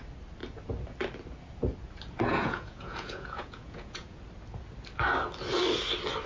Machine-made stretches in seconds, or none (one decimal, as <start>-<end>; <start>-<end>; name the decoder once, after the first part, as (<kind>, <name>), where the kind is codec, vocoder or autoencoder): 2.3-4.2 (vocoder, Vocos)